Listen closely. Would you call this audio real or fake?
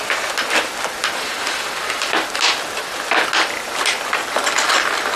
real